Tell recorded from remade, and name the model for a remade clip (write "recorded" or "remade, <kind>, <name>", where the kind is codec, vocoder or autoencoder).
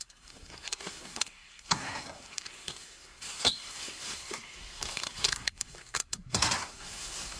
remade, codec, SNAC